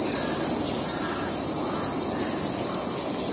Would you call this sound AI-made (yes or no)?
no